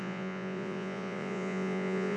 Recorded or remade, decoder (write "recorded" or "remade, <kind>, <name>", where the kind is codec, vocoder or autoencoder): remade, vocoder, Vocos